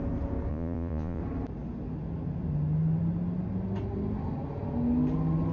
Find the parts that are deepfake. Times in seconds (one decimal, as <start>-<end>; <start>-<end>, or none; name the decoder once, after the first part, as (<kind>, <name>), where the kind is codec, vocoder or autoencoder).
0.5-1.2 (vocoder, Vocos)